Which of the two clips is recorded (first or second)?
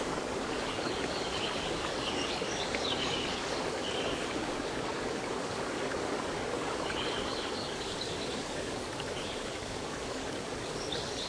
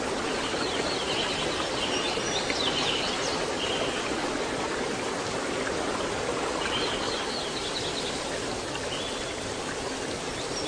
second